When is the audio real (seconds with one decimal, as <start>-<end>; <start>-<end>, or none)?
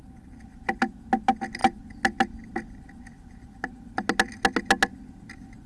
0.0-5.7